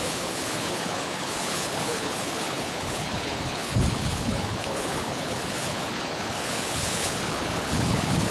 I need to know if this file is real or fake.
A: fake